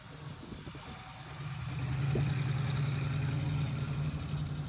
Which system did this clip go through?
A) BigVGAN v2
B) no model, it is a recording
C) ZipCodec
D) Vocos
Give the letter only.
B